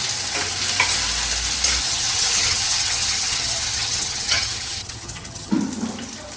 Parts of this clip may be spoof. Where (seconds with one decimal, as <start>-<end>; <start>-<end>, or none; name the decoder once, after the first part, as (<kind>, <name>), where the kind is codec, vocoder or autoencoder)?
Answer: 1.8-5.5 (vocoder, HiFi-GAN)